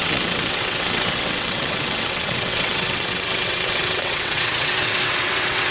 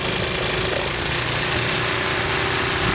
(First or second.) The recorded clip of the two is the second